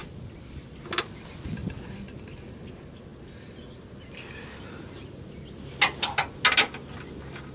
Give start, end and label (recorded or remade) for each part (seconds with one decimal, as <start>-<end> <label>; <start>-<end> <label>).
0.0-0.8 remade; 0.8-7.5 recorded